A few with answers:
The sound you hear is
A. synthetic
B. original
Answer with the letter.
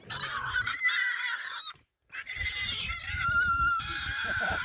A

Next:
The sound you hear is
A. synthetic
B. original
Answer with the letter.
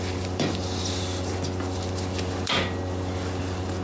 A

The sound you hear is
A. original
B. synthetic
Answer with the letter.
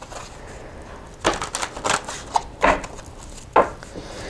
A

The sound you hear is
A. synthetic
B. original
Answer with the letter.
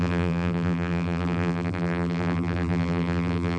A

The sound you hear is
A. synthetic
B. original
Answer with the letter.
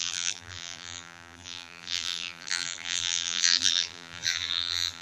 A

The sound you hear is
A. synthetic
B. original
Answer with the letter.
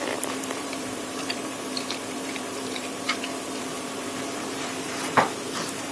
A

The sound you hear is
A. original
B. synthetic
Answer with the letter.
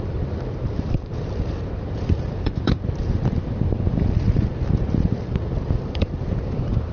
B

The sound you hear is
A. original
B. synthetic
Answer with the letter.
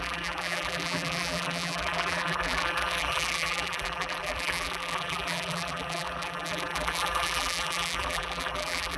B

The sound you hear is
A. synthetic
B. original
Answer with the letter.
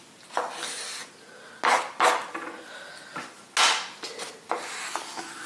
B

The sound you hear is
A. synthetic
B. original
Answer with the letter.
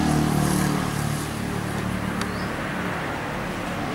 B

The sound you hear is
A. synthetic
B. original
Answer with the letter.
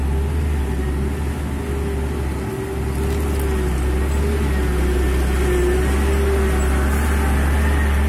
B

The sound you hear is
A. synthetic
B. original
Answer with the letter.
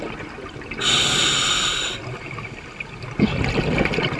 B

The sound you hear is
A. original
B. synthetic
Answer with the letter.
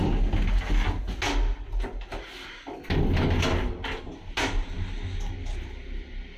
A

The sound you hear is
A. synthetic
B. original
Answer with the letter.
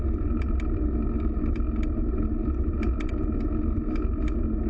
B